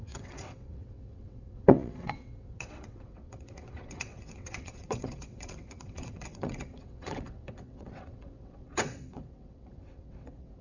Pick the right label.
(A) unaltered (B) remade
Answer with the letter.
B